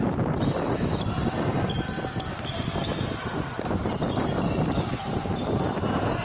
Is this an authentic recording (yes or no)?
yes